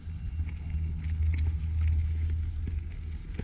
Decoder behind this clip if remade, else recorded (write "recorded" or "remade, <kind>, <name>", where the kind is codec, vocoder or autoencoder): recorded